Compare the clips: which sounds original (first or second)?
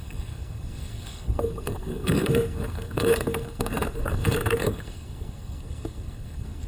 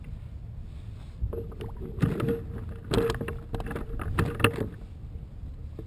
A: second